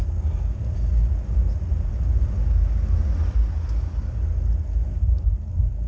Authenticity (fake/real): real